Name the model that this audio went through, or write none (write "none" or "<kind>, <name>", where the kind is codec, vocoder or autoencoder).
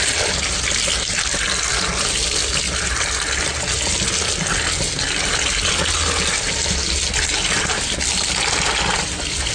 none